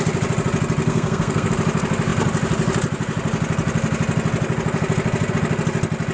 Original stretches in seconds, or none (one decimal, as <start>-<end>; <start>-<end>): 0.0-0.8; 1.5-6.1